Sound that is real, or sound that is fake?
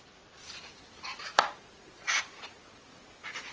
real